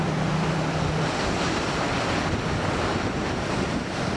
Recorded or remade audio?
remade